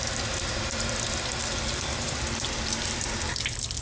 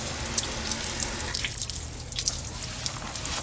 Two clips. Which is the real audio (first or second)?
second